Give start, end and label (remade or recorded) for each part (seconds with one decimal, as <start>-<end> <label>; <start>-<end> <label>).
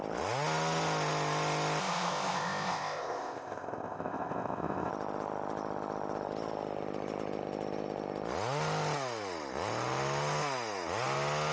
0.0-1.8 recorded; 1.8-4.9 remade; 4.9-11.5 recorded